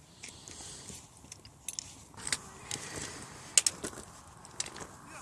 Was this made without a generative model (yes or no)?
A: yes